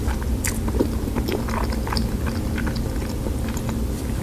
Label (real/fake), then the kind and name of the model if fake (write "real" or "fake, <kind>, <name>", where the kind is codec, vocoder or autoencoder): real